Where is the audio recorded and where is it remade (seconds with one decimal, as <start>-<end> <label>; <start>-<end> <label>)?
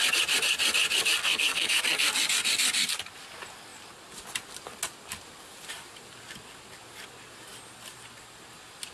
0.0-1.2 recorded; 1.2-1.8 remade; 1.8-8.9 recorded